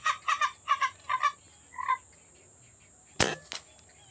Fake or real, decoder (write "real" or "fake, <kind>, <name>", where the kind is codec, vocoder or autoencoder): real